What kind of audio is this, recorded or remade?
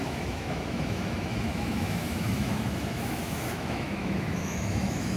remade